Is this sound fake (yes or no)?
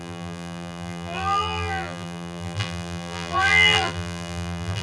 yes